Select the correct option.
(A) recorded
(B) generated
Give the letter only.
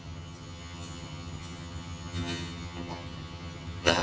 B